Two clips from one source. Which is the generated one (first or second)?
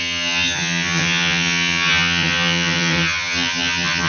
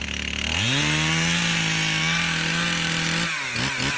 first